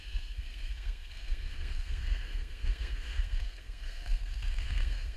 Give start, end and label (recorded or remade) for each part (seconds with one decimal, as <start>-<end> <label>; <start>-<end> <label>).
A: 0.0-5.2 remade